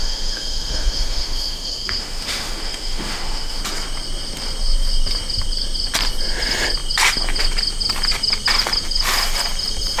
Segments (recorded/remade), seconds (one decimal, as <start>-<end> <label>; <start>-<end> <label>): 0.0-3.6 remade; 3.6-10.0 recorded